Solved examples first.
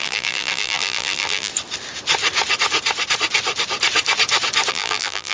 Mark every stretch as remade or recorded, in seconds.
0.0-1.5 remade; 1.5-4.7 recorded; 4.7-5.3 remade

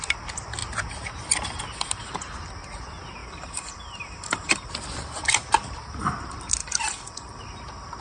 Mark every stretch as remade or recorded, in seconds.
0.0-3.2 recorded; 3.2-4.7 remade; 4.7-6.6 recorded; 6.6-7.4 remade; 7.4-8.0 recorded

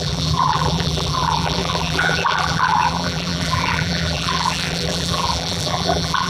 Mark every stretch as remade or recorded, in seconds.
0.0-6.3 remade

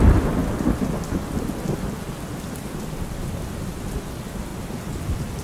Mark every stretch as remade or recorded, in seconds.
0.0-4.5 recorded; 4.5-5.0 remade; 5.0-5.4 recorded

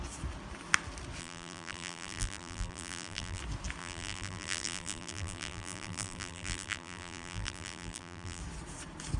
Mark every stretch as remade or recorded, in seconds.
0.0-1.2 recorded; 1.2-3.4 remade; 3.4-3.8 recorded; 3.8-8.4 remade; 8.4-9.2 recorded